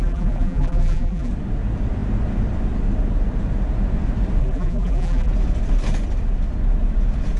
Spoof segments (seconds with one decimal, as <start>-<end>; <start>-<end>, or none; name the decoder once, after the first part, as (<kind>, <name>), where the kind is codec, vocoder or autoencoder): 0.0-1.3 (vocoder, BigVGAN v2); 4.4-5.3

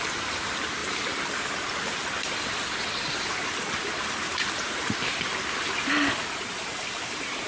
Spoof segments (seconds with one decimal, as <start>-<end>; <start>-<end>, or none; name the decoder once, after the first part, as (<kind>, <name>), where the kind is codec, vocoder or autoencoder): 0.0-0.8 (vocoder, BigVGAN v2); 4.7-5.3; 6.8-7.5

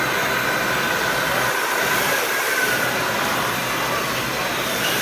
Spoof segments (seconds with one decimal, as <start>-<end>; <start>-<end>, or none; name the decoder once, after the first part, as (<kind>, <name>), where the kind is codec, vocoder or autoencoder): 0.0-3.6 (vocoder, BigVGAN v2); 4.2-5.0

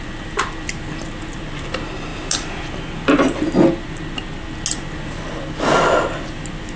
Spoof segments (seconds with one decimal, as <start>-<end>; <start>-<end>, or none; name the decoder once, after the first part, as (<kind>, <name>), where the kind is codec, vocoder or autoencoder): none

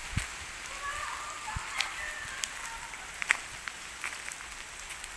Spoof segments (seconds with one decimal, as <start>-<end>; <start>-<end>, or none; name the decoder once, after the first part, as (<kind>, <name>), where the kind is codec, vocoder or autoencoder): none